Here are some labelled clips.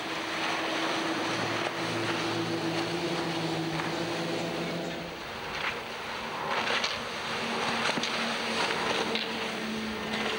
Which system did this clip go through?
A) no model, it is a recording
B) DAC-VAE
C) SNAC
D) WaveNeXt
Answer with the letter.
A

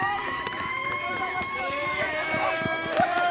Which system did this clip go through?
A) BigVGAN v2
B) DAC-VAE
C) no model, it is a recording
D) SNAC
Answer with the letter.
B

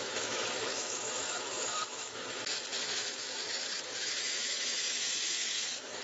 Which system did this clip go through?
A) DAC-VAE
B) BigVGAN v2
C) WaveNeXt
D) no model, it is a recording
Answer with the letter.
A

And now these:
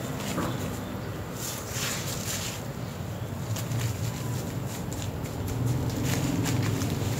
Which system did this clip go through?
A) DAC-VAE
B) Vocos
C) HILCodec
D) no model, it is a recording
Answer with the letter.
D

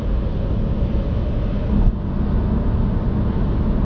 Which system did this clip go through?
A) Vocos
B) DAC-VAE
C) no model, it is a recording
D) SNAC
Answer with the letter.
C